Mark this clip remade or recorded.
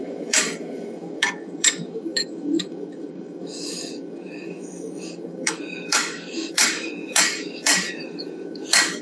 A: remade